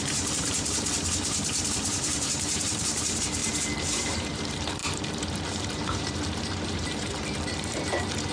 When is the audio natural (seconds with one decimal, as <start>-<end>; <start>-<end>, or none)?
3.4-4.0